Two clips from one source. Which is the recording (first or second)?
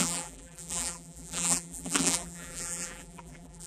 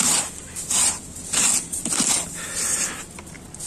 second